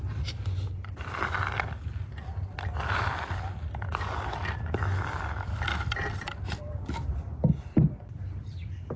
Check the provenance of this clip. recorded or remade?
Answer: recorded